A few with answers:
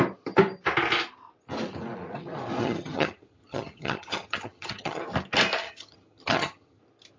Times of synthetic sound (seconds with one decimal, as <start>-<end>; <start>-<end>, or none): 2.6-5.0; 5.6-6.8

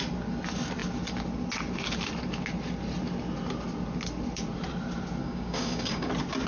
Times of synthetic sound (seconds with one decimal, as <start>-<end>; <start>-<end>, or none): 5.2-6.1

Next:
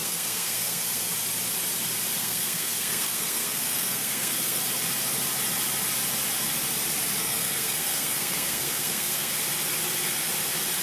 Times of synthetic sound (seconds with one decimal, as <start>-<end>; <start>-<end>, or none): 0.0-1.1; 2.2-4.6; 7.2-9.3

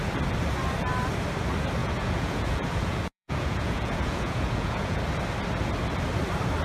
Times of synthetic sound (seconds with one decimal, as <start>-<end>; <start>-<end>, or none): 1.8-5.0

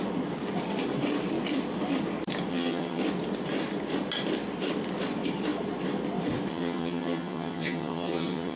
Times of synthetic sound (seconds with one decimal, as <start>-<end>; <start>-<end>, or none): 2.5-3.0; 6.5-8.6

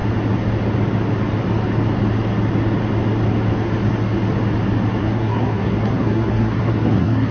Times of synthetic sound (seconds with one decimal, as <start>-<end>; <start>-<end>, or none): 5.0-7.3